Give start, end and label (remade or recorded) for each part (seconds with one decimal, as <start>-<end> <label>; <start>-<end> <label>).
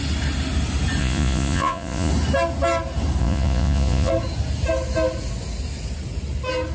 0.0-1.0 recorded; 1.0-2.1 remade; 2.1-3.2 recorded; 3.2-4.1 remade; 4.1-6.7 recorded